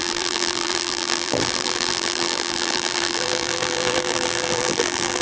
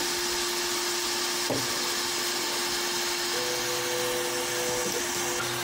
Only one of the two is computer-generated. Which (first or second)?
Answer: first